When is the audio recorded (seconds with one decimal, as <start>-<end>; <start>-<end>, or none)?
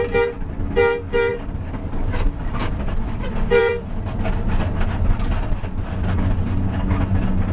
0.0-1.3; 5.4-7.5